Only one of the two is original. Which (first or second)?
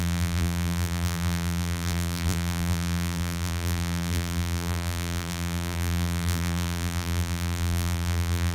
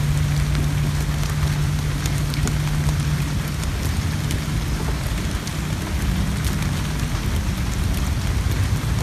second